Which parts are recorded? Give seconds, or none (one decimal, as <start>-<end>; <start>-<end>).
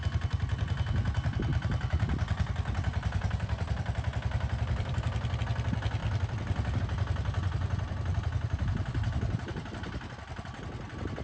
0.0-1.5; 5.4-6.0; 6.8-7.6; 9.5-11.2